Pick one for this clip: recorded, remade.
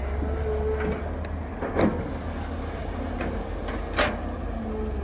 recorded